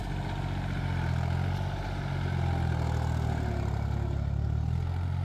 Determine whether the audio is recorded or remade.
recorded